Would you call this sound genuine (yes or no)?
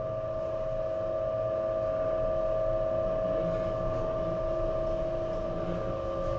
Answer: yes